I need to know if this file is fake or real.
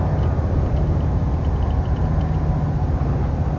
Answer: real